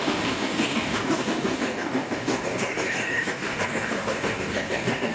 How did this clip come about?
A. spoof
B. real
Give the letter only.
A